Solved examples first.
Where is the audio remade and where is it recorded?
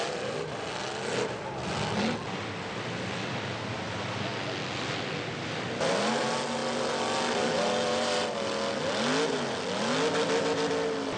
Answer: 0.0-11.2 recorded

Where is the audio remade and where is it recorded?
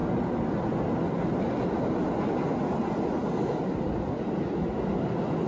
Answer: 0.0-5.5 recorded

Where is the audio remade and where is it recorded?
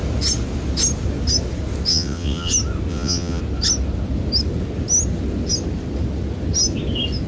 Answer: 0.0-1.9 recorded; 1.9-2.5 remade; 2.5-2.9 recorded; 2.9-3.4 remade; 3.4-7.3 recorded